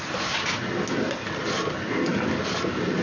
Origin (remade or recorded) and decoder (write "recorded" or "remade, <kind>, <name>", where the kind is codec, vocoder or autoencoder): recorded